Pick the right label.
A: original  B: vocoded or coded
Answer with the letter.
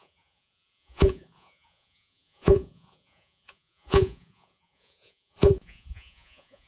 B